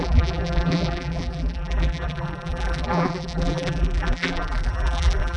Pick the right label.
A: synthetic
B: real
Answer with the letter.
A